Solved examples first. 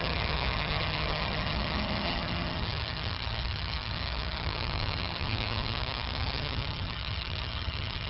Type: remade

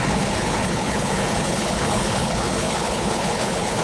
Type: remade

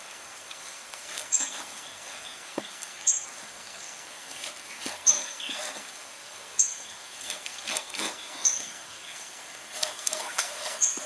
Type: remade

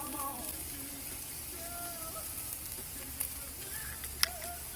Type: recorded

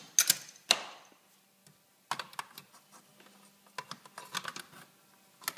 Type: recorded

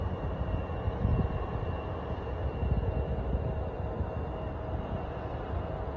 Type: recorded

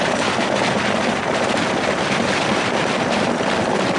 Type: remade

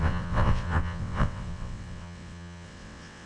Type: remade